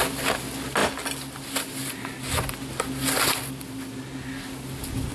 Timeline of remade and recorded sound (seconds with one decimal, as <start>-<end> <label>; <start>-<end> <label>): 0.0-5.1 recorded